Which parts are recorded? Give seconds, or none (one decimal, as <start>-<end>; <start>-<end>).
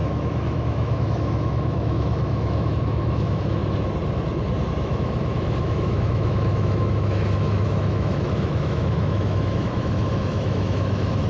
3.6-4.7